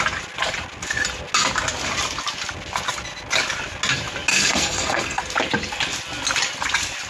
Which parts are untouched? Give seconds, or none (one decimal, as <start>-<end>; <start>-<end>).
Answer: 0.0-4.3; 5.2-7.1